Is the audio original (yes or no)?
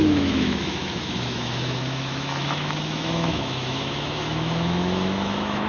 no